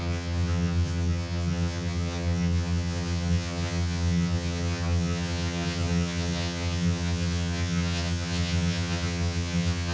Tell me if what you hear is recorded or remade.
remade